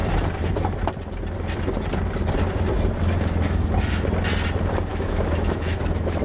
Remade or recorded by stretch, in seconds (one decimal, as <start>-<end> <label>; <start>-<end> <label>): 0.0-4.9 recorded; 4.9-6.2 remade